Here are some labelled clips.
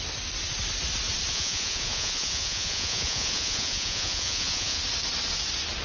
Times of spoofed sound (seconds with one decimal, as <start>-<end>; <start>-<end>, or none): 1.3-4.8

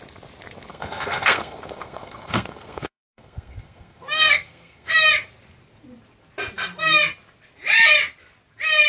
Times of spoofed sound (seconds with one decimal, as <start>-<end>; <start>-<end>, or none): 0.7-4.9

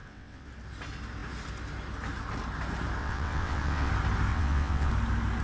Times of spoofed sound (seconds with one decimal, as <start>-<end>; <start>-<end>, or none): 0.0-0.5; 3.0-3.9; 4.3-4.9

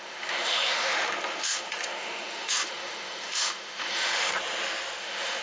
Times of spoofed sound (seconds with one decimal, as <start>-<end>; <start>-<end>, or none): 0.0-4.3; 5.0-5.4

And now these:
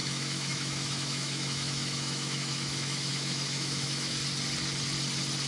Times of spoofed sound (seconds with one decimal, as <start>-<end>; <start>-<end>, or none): 0.0-4.2

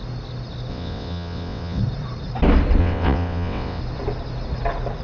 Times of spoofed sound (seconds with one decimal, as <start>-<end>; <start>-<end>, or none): 0.7-1.8; 2.8-3.8

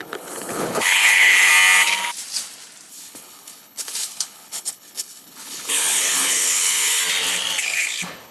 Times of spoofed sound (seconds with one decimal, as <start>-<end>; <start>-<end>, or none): 0.0-1.5; 2.9-7.0; 7.6-8.3